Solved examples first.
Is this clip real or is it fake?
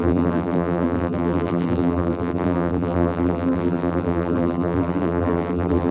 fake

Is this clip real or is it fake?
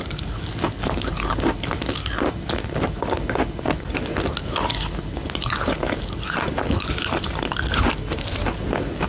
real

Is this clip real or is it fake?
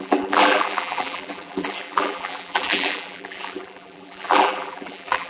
fake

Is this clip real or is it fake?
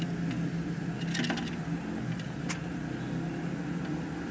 real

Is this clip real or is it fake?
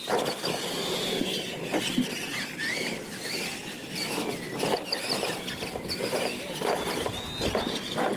real